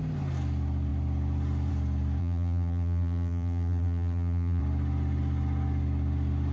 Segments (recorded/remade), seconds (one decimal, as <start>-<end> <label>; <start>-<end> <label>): 0.0-2.2 recorded; 2.2-4.6 remade; 4.6-6.5 recorded